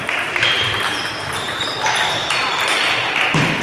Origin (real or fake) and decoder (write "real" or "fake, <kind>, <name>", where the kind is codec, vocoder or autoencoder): fake, vocoder, BigVGAN v2